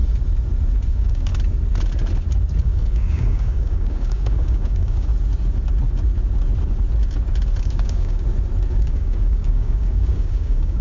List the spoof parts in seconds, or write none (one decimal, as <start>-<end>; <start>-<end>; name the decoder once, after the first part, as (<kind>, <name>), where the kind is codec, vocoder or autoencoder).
0.9-1.3 (codec, DAC); 2.6-5.1; 7.6-8.2; 8.7-10.8